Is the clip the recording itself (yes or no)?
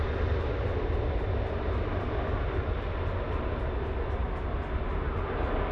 yes